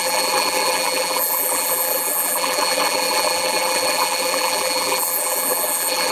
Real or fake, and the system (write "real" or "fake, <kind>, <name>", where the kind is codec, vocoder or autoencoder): fake, vocoder, BigVGAN v2